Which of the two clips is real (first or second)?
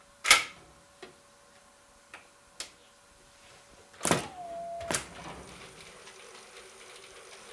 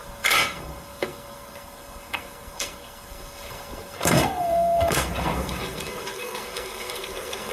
first